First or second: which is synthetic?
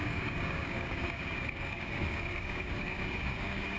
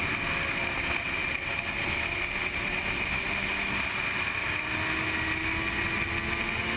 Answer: first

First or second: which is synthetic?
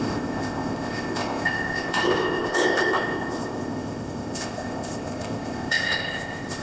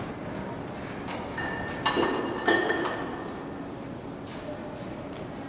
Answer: first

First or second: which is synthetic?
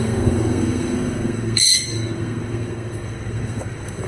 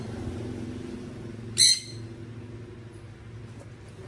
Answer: first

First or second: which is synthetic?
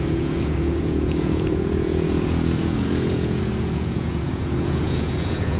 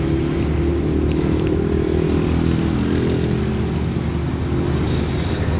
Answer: first